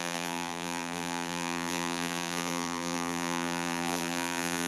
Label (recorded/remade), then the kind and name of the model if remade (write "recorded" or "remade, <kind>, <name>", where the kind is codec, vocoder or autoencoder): remade, vocoder, BigVGAN v2